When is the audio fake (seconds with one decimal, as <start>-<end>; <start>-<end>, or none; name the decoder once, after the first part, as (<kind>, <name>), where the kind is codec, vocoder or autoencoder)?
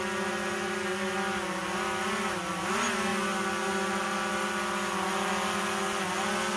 none